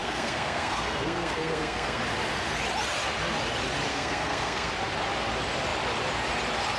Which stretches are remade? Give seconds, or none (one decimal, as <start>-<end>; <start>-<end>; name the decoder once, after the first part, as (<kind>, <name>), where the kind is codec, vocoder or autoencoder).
0.0-2.0 (codec, SNAC); 3.9-4.7